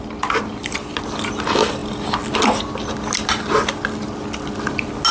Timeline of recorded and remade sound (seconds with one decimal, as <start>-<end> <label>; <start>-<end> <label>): 0.0-5.1 recorded